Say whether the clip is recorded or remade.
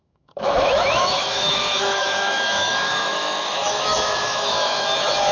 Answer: remade